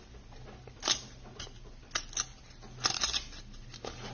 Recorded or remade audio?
recorded